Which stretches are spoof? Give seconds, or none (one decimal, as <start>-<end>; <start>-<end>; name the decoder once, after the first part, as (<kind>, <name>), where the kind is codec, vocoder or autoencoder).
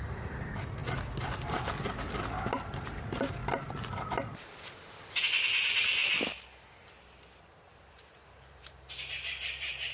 0.0-0.8 (vocoder, BigVGAN v2); 2.6-3.4; 5.2-6.0; 7.9-9.9